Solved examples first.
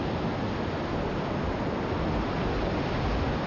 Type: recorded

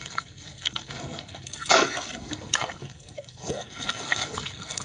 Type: remade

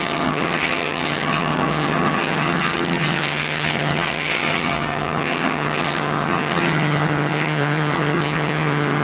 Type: remade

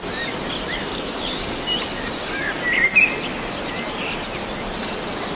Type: recorded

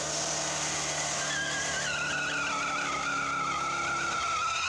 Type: recorded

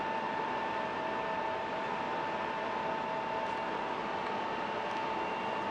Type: remade